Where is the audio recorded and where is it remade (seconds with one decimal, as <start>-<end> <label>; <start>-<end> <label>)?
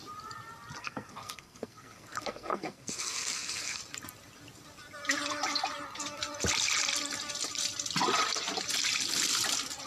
0.0-0.8 recorded; 0.8-3.8 remade; 3.8-9.9 recorded